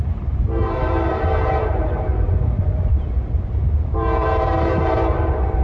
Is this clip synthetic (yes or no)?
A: yes